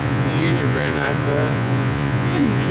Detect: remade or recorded remade